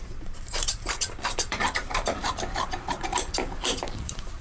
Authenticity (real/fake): fake